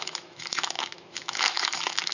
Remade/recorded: remade